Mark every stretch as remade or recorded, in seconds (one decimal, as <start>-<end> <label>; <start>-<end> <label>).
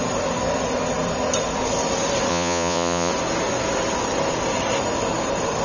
0.0-2.3 recorded; 2.3-3.1 remade; 3.1-5.6 recorded